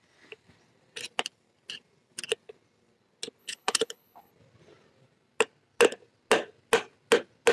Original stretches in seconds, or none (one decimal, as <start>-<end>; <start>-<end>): 0.0-3.4; 4.3-7.5